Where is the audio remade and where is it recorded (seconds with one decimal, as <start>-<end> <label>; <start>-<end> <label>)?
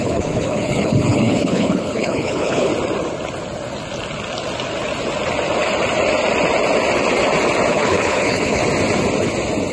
0.0-2.7 remade; 2.7-7.7 recorded; 7.7-8.6 remade; 8.6-9.7 recorded